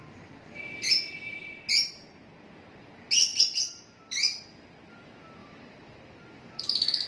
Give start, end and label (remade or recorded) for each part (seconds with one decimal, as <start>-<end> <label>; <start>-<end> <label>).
0.0-3.3 recorded; 3.3-4.4 remade; 4.4-5.4 recorded; 5.4-6.6 remade; 6.6-7.1 recorded